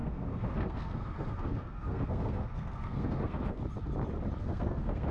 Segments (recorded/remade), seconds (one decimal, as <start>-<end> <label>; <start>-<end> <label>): 0.0-3.6 remade; 3.6-4.4 recorded; 4.4-5.1 remade